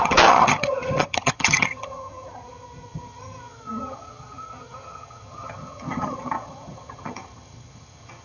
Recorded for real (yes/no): no